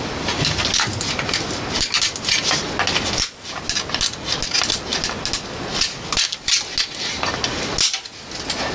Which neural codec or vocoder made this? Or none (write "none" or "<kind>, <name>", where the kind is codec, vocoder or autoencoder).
none